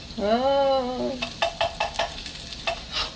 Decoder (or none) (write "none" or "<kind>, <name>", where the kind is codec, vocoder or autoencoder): none